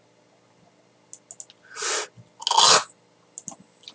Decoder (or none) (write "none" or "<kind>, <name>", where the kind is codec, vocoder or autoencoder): none